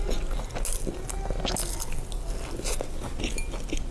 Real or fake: real